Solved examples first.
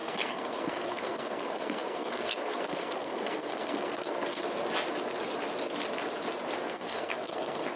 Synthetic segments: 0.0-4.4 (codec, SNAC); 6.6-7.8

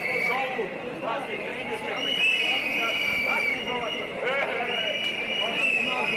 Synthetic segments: none

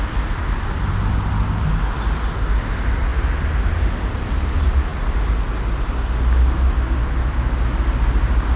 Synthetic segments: none

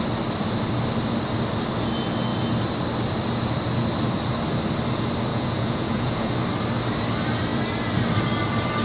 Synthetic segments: 5.3-6.3 (vocoder, Vocos)

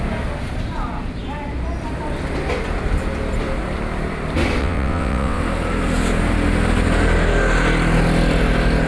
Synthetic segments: 4.6-5.4 (vocoder, WaveNeXt)

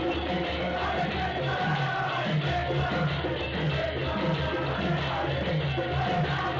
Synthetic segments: 4.0-4.8 (vocoder, BigVGAN v2)